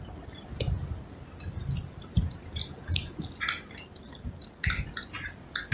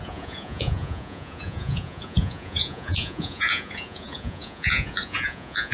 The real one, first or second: first